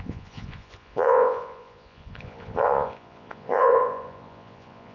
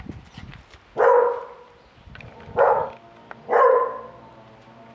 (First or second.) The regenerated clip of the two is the first